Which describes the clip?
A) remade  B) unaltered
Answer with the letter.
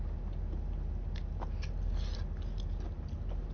B